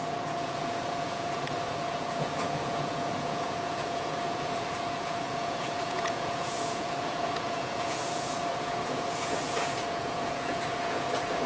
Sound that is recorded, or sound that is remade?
remade